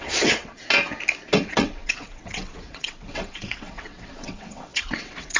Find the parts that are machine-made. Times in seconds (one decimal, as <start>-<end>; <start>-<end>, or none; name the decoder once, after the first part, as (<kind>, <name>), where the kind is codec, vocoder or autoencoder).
0.0-0.6 (vocoder, WaveNeXt); 1.4-5.4